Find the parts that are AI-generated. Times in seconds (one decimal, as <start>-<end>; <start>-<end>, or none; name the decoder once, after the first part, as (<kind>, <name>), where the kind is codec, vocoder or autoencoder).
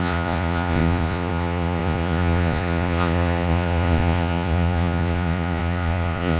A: 0.0-6.4 (vocoder, Vocos)